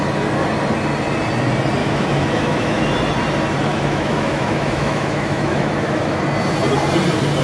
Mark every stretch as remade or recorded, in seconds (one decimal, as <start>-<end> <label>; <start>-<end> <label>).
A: 0.0-1.8 recorded; 1.8-2.8 remade; 2.8-3.7 recorded; 3.7-6.2 remade; 6.2-7.4 recorded